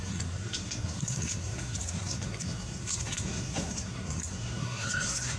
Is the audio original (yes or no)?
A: no